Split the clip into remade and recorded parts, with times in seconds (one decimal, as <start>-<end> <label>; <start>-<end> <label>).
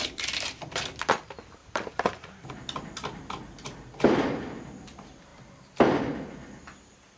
0.0-1.6 recorded; 1.6-2.5 remade; 2.5-7.2 recorded